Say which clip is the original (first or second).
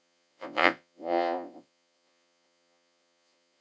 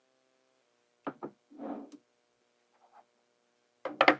second